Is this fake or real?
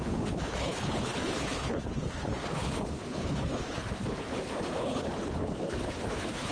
fake